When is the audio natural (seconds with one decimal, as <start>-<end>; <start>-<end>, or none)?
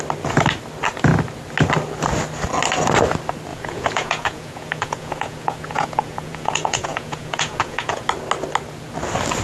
0.0-3.5; 8.1-9.4